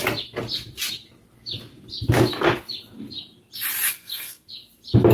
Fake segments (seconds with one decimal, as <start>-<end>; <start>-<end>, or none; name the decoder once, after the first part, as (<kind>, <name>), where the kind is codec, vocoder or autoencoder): 3.9-4.5 (codec, SNAC)